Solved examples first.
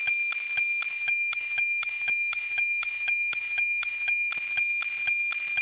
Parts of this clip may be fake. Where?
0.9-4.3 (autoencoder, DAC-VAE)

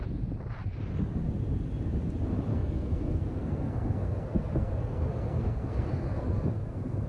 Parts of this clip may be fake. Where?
2.5-7.1 (codec, SNAC)

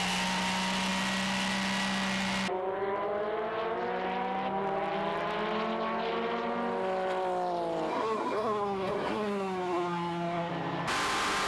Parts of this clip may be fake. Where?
7.9-10.5 (codec, SNAC)

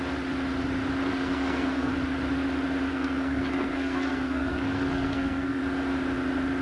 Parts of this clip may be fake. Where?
1.1-1.9 (codec, SNAC); 2.9-5.6